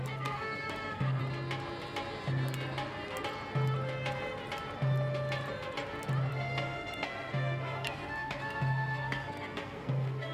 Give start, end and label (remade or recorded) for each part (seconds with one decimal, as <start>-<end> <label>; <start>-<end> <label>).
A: 0.0-1.2 remade; 1.2-6.3 recorded; 6.3-10.3 remade